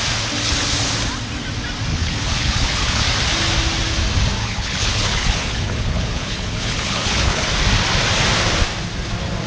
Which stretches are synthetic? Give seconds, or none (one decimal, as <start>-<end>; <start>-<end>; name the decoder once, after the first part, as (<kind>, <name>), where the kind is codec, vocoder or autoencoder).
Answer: 1.9-3.0 (codec, HILCodec); 4.4-7.5